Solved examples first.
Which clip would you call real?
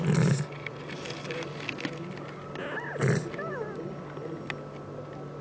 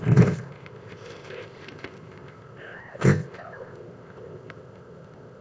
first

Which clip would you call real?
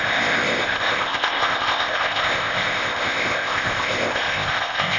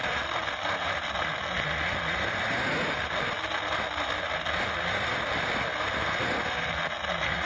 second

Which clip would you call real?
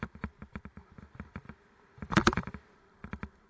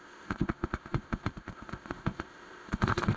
first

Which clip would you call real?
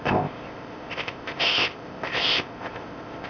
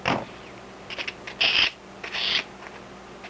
second